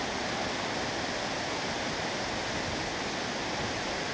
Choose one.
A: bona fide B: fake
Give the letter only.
A